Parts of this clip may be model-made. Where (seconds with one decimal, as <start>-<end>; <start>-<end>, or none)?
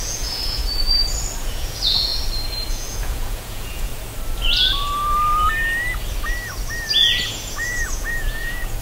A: 0.0-0.6; 1.4-2.1; 2.7-3.9; 7.0-8.8